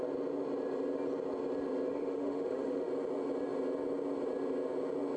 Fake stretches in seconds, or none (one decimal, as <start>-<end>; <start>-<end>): 1.9-2.9